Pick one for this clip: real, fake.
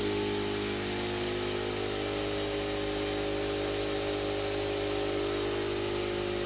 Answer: real